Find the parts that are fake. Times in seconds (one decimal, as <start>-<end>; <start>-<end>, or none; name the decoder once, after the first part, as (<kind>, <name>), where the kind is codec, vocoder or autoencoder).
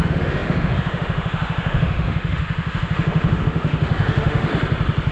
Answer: 0.0-4.5 (autoencoder, DAC-VAE)